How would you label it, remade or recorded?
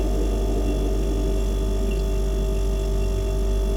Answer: recorded